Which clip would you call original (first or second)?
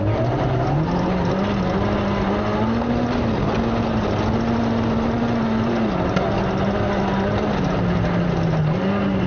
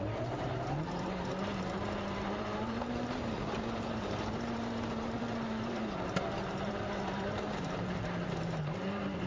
first